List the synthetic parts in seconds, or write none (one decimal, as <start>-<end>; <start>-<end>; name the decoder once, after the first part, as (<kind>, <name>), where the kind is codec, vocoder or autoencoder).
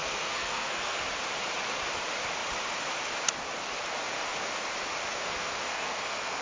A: 0.0-1.0 (codec, SNAC); 5.1-6.4